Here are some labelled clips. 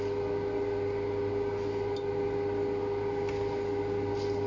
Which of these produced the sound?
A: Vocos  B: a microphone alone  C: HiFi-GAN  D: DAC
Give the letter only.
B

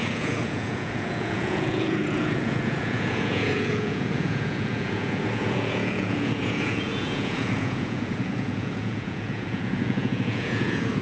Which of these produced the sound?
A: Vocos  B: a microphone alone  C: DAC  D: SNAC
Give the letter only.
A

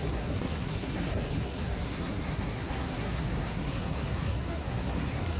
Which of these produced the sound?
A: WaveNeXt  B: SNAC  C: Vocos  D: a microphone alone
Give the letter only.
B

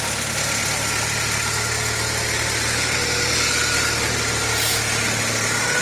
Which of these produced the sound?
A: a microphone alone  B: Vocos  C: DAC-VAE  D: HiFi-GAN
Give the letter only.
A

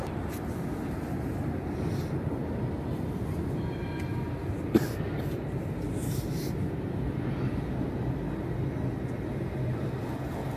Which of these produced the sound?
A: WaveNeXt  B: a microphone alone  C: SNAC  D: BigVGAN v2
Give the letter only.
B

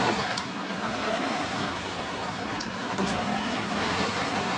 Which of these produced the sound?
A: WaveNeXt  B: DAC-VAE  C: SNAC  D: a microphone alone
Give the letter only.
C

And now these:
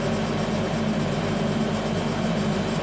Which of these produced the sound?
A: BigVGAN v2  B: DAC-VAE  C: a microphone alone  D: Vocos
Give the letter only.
C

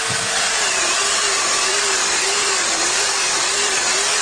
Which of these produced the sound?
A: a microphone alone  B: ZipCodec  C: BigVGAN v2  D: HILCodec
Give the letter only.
C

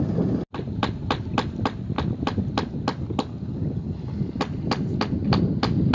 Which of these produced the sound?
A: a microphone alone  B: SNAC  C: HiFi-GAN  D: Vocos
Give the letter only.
A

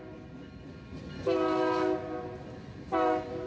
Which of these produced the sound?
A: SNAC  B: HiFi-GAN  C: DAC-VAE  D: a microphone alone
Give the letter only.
D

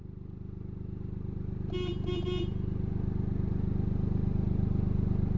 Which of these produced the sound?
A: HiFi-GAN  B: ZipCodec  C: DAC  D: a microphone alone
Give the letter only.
D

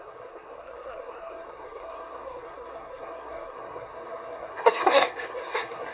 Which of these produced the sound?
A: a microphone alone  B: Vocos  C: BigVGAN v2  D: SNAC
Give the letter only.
D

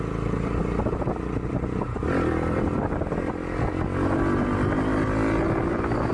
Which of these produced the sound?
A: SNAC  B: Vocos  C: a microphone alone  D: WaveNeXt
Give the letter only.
C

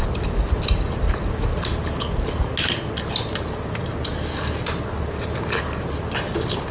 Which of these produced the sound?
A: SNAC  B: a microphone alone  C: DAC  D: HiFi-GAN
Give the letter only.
B